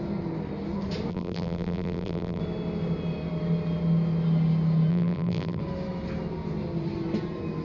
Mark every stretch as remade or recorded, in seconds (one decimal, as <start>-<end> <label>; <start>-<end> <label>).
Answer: 0.0-1.1 recorded; 1.1-2.4 remade; 2.4-4.9 recorded; 4.9-5.6 remade; 5.6-7.6 recorded

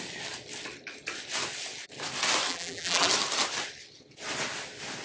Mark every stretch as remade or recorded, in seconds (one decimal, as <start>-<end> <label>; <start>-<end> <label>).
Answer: 0.0-2.5 recorded; 2.5-3.1 remade; 3.1-5.0 recorded

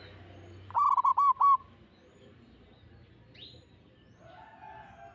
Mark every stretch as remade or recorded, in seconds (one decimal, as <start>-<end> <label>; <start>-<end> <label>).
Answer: 0.0-1.1 recorded; 1.1-2.9 remade; 2.9-5.1 recorded

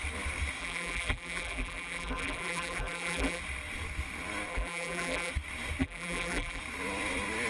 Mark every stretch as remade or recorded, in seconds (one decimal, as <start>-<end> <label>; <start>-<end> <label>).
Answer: 0.0-0.6 recorded; 0.6-3.4 remade; 3.4-4.5 recorded; 4.5-5.3 remade; 5.3-5.8 recorded; 5.8-6.6 remade; 6.6-7.5 recorded

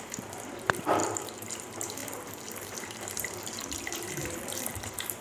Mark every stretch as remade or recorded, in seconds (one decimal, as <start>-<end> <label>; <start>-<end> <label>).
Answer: 0.0-5.2 remade

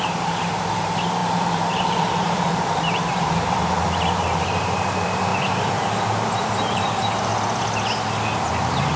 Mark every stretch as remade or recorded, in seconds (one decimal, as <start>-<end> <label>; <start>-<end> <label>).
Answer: 0.0-5.3 remade; 5.3-6.4 recorded; 6.4-7.3 remade; 7.3-8.4 recorded; 8.4-9.0 remade

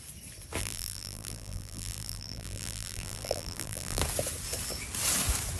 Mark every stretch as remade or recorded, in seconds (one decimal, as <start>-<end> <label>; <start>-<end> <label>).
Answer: 0.0-0.6 recorded; 0.6-4.0 remade; 4.0-5.6 recorded